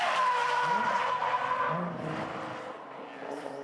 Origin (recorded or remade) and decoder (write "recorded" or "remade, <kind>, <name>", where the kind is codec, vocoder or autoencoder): recorded